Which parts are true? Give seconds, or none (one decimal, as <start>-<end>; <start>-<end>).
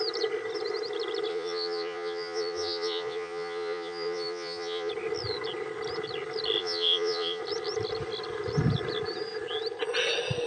0.0-1.3; 4.9-6.6; 7.4-10.5